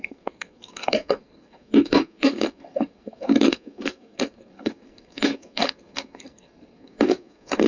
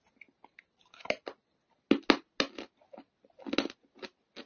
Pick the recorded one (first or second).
second